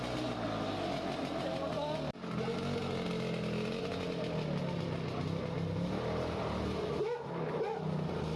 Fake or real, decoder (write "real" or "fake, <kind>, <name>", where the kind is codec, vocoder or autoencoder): real